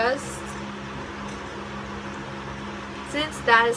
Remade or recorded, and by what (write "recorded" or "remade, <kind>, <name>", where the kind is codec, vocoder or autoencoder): recorded